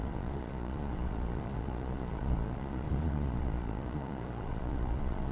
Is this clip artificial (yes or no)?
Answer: yes